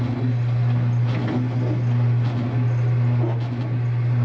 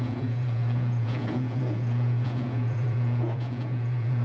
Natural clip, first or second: first